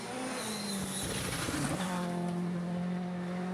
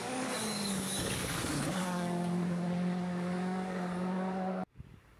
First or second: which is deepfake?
second